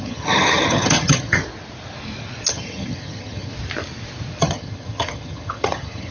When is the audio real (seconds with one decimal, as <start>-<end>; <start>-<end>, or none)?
1.4-2.5; 3.5-4.4